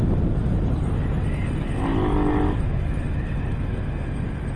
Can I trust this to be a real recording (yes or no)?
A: yes